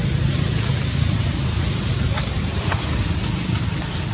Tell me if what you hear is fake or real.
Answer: real